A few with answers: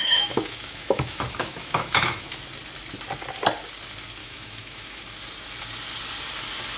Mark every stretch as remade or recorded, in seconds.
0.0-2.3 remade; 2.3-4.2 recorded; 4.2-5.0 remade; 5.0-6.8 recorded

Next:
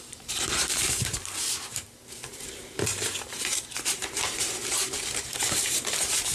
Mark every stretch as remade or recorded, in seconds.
0.0-6.3 remade